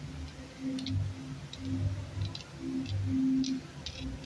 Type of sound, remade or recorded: recorded